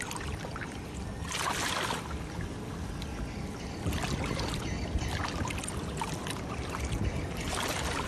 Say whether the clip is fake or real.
real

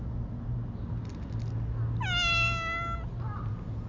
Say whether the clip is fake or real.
real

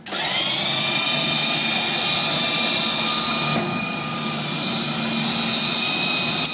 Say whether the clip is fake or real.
real